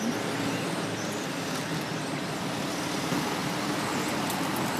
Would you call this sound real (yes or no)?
yes